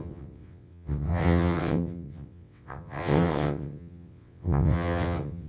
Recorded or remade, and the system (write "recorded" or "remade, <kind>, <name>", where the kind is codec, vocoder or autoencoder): remade, vocoder, WaveNeXt